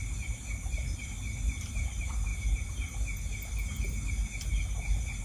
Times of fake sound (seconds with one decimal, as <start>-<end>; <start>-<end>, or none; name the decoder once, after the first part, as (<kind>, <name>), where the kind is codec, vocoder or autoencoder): none